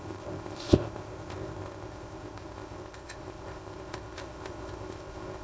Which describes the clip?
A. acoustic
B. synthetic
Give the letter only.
B